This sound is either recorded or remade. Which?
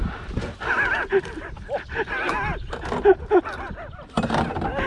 recorded